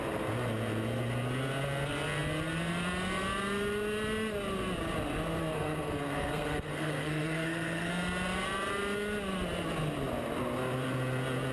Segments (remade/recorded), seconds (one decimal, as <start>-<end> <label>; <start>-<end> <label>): 0.0-5.4 recorded; 5.4-7.9 remade; 7.9-11.5 recorded